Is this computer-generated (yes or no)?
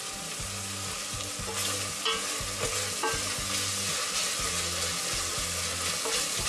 no